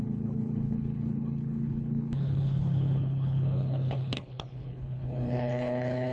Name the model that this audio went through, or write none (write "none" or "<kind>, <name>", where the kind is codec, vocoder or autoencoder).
codec, HILCodec